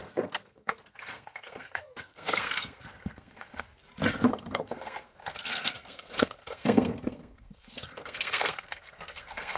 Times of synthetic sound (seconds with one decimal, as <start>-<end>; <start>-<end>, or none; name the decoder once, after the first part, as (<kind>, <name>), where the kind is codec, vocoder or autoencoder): 0.0-3.7 (codec, SNAC); 4.3-9.6